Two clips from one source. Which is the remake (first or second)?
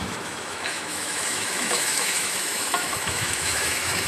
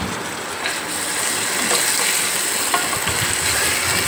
first